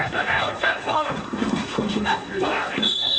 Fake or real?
fake